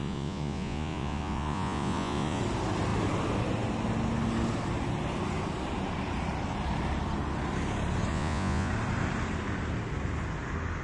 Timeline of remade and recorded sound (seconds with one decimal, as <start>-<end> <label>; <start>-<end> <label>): 0.0-2.4 remade; 2.4-8.1 recorded; 8.1-8.7 remade; 8.7-10.8 recorded